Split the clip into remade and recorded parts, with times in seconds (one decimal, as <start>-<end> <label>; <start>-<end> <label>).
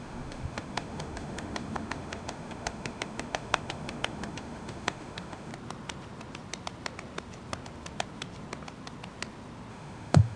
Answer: 0.0-5.5 remade; 5.5-9.7 recorded; 9.7-10.4 remade